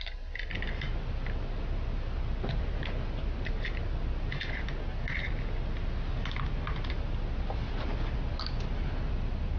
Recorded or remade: recorded